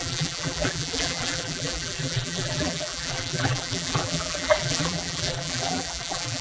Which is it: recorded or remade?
remade